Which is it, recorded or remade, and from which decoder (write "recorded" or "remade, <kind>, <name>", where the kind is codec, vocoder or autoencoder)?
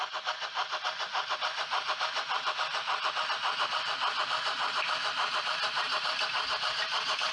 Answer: remade, vocoder, BigVGAN v2